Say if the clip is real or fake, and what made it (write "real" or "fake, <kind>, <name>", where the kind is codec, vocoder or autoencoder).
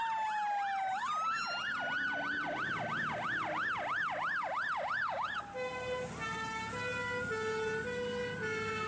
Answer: real